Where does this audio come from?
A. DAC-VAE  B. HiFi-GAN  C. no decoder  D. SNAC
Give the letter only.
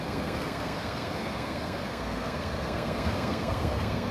D